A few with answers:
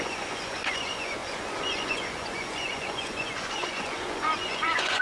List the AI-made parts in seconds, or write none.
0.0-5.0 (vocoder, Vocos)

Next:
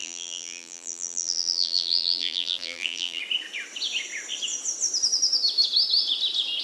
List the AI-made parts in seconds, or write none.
0.0-3.2 (vocoder, BigVGAN v2)

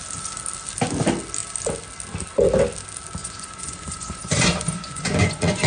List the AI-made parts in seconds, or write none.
3.2-5.7 (vocoder, Vocos)

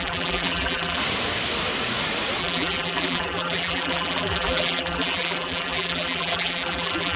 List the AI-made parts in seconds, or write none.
0.0-1.0 (vocoder, BigVGAN v2); 2.4-7.2

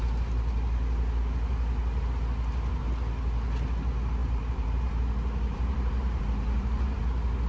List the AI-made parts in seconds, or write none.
4.2-5.1 (vocoder, BigVGAN v2); 5.5-7.0

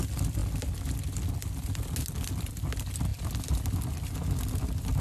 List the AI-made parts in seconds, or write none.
none

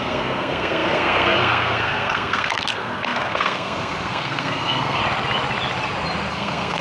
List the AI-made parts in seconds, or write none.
0.0-5.0 (codec, SNAC); 6.3-6.8

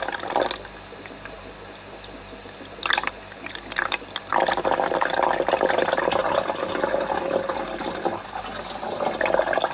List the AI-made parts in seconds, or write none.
4.3-5.6 (vocoder, BigVGAN v2)